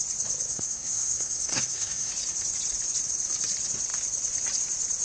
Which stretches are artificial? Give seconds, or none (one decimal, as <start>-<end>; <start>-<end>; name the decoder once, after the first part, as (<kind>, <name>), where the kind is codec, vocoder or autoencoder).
0.5-2.1 (codec, SNAC)